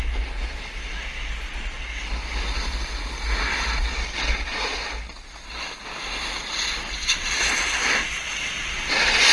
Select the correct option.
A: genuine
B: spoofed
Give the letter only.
A